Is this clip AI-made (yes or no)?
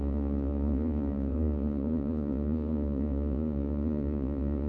yes